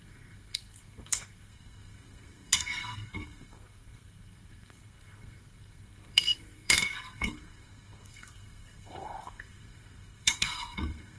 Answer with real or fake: fake